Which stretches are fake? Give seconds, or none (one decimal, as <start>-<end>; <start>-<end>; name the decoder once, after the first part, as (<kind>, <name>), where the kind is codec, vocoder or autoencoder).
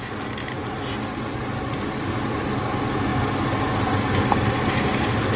none